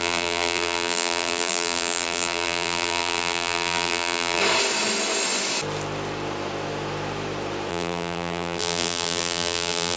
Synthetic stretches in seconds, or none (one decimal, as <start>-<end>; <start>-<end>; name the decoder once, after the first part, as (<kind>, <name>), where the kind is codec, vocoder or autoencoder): 0.0-4.4 (vocoder, BigVGAN v2); 7.7-10.0